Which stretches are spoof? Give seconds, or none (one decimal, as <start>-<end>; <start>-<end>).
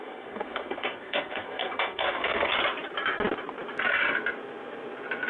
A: 0.0-2.5